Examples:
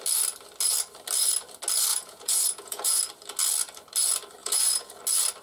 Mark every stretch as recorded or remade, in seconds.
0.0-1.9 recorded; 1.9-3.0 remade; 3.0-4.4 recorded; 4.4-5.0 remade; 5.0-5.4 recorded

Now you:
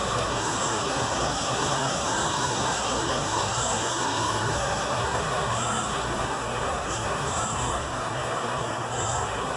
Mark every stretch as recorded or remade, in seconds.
0.0-9.6 remade

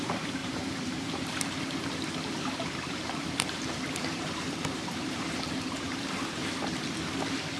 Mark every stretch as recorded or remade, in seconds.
0.0-6.4 remade; 6.4-7.6 recorded

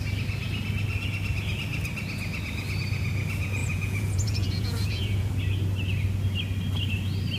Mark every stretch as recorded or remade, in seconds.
0.0-3.6 recorded; 3.6-5.3 remade; 5.3-7.4 recorded

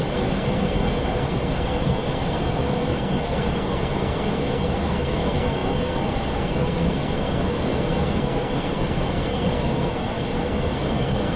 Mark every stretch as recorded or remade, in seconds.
0.0-11.4 remade

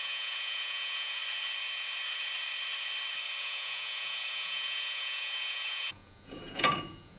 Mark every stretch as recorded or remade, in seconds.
0.0-1.2 remade; 1.2-3.4 recorded; 3.4-7.2 remade